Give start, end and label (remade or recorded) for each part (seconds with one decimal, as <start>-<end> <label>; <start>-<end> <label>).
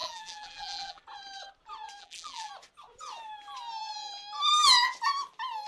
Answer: 0.0-1.0 remade; 1.0-2.0 recorded; 2.0-2.5 remade; 2.5-5.7 recorded